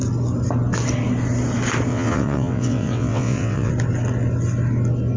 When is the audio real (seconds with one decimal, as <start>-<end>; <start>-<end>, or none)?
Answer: 0.0-1.9; 3.7-5.2